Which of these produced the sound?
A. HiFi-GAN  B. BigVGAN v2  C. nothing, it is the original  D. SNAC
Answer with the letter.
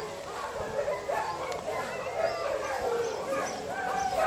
C